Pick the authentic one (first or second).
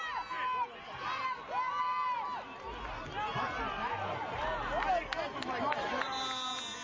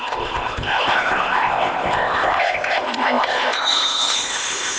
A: first